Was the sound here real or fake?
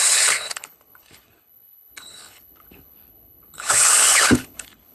fake